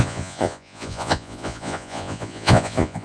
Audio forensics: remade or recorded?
remade